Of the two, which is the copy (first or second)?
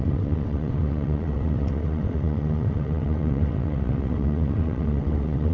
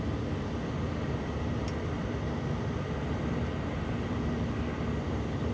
first